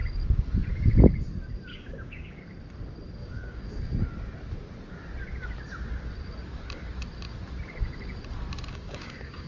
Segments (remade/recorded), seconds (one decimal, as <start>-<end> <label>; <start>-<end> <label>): 0.0-1.7 recorded; 1.7-2.4 remade; 2.4-3.2 recorded; 3.2-3.8 remade; 3.8-8.7 recorded; 8.7-9.5 remade